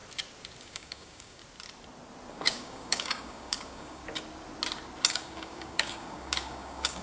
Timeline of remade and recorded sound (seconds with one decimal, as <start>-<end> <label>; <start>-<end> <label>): 0.0-0.6 recorded; 0.6-1.4 remade; 1.4-2.3 recorded; 2.3-4.0 remade; 4.0-5.1 recorded; 5.1-7.0 remade